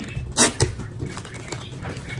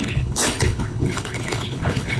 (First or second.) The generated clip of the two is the second